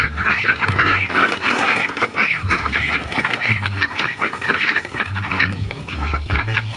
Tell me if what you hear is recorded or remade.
remade